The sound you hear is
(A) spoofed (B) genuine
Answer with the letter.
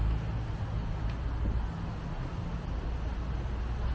B